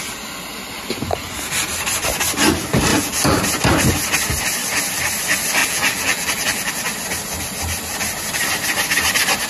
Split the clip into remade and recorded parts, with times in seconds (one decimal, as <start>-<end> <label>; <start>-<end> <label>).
0.0-2.9 recorded; 2.9-3.4 remade; 3.4-5.6 recorded; 5.6-6.7 remade; 6.7-9.5 recorded